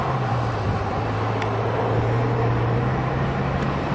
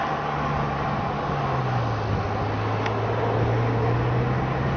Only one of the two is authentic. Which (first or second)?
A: second